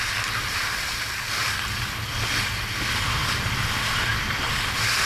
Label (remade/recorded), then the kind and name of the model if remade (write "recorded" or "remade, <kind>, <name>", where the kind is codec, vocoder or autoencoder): recorded